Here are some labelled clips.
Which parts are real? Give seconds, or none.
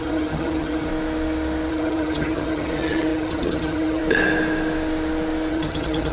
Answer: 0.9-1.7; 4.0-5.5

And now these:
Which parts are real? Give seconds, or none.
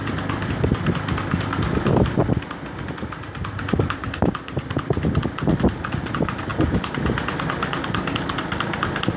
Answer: 0.0-9.2